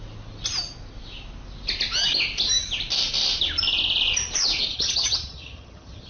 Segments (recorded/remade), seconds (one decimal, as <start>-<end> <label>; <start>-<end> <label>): 0.0-4.7 recorded; 4.7-6.1 remade

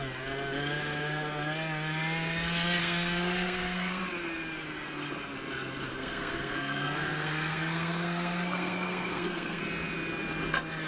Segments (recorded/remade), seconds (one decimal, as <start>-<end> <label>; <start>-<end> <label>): 0.0-2.8 recorded; 2.8-4.0 remade; 4.0-5.9 recorded; 5.9-9.6 remade; 9.6-10.9 recorded

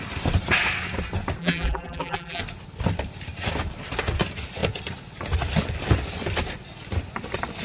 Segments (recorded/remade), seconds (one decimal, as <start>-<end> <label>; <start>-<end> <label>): 0.0-1.4 recorded; 1.4-2.4 remade; 2.4-7.6 recorded

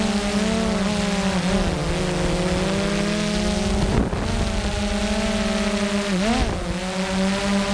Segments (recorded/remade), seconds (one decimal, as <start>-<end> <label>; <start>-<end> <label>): 0.0-7.7 recorded

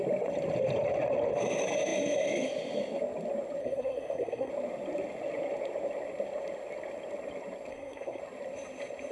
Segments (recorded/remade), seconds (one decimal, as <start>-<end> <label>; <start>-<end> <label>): 0.0-3.6 recorded; 3.6-4.5 remade; 4.5-7.7 recorded; 7.7-8.2 remade; 8.2-9.1 recorded

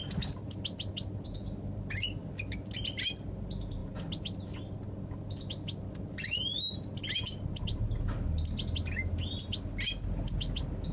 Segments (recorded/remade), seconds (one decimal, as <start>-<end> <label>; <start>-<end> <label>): 0.0-10.9 recorded

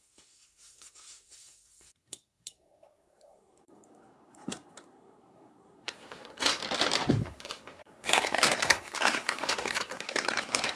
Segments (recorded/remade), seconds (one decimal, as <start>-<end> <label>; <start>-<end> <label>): 0.0-6.6 remade; 6.6-7.1 recorded; 7.1-10.8 remade